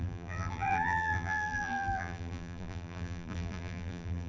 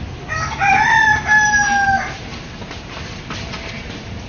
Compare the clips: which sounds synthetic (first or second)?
first